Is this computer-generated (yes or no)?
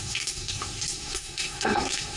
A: yes